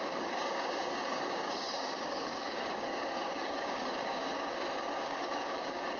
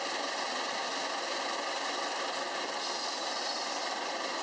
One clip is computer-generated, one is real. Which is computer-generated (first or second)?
first